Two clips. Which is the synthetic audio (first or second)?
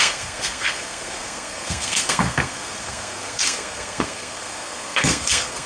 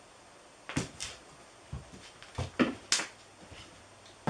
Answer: first